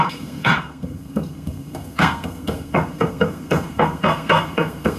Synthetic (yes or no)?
yes